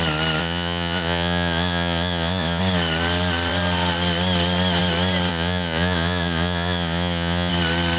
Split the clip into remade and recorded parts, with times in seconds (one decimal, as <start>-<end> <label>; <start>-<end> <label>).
0.0-0.4 recorded; 0.4-2.6 remade; 2.6-5.3 recorded; 5.3-7.5 remade; 7.5-8.0 recorded